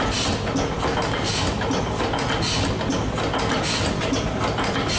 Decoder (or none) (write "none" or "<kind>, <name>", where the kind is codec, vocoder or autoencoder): none